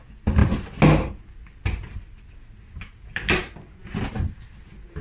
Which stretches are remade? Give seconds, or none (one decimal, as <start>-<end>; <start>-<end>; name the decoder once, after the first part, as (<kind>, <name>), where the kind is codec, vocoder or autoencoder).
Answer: none